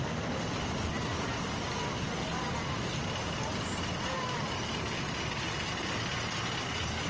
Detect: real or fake real